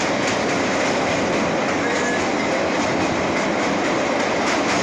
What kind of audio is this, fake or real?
real